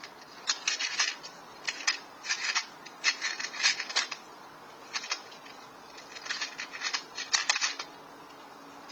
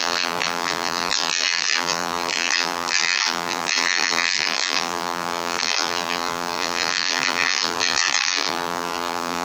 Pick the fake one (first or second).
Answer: second